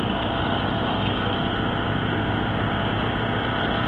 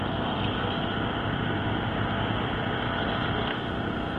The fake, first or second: second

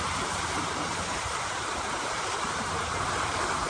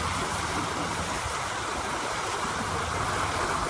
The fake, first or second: first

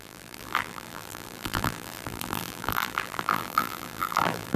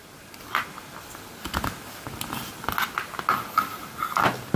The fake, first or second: first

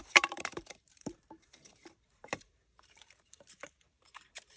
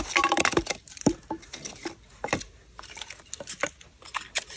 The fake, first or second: first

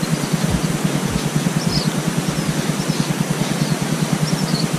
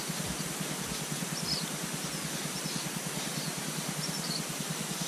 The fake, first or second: second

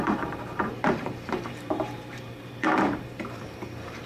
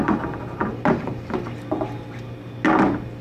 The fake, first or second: first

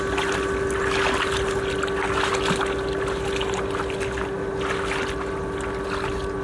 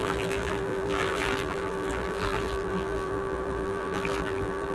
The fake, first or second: second